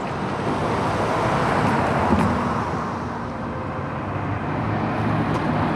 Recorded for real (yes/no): yes